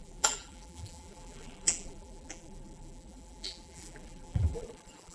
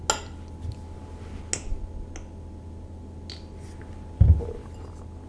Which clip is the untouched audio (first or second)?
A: second